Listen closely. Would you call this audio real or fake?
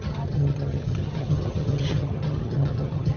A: fake